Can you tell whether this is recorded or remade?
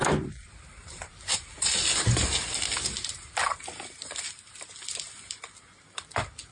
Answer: remade